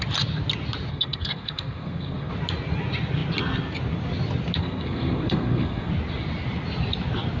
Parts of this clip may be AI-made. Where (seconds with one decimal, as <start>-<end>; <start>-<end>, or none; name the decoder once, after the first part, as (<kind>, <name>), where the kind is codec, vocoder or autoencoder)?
0.9-2.3 (codec, SNAC); 4.6-5.9